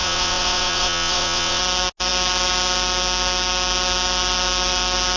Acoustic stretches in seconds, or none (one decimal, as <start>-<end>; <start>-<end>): 1.6-5.2